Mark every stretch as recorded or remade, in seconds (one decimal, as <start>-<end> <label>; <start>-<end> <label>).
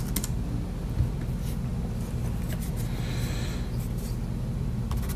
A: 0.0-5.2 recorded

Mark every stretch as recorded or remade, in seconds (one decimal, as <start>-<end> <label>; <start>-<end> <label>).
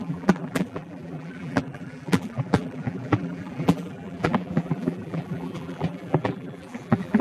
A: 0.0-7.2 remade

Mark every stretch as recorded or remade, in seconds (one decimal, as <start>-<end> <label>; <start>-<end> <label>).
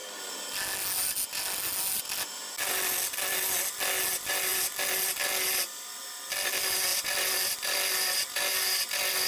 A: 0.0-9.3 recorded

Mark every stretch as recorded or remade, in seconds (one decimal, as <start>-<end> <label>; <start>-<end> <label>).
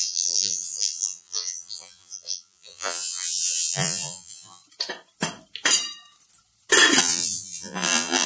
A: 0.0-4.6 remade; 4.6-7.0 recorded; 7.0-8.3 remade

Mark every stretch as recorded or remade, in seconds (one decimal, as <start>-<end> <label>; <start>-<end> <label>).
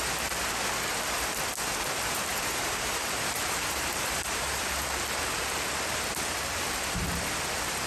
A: 0.0-2.3 recorded; 2.3-4.6 remade; 4.6-7.9 recorded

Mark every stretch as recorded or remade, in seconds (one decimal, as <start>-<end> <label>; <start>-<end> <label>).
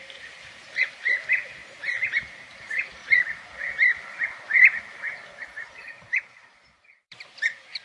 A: 0.0-3.0 remade; 3.0-5.7 recorded; 5.7-7.8 remade